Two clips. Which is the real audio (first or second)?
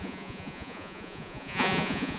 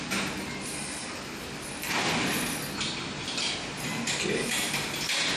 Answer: second